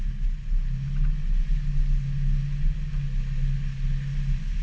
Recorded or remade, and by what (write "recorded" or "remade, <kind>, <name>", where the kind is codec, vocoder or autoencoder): recorded